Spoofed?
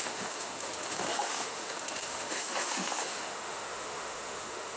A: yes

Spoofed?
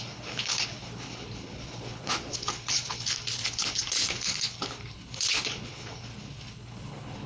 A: yes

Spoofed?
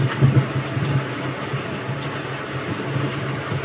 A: no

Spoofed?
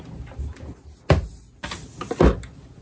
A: no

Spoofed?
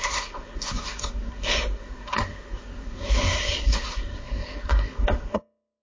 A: yes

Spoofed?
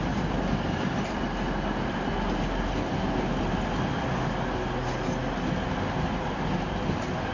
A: no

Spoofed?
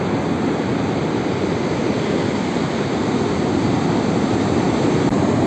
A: no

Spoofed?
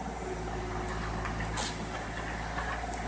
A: no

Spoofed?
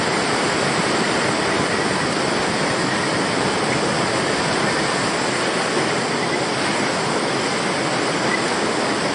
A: no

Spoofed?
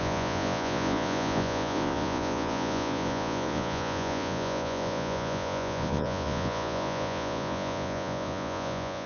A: yes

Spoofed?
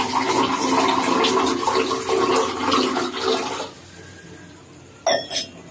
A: no